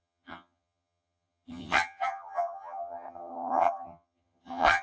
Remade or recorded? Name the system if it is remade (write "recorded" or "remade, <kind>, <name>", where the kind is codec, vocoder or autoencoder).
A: remade, vocoder, HiFi-GAN